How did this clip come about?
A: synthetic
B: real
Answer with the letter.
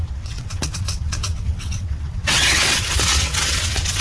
A